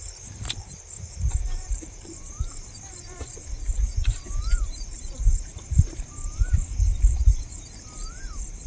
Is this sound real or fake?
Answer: fake